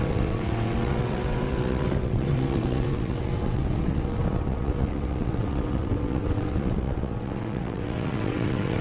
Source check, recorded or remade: remade